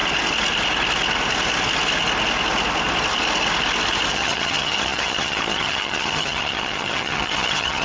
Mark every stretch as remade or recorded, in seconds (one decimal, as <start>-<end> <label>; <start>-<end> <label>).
0.0-4.1 recorded; 4.1-7.8 remade